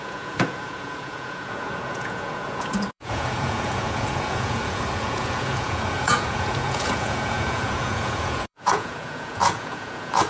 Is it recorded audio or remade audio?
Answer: remade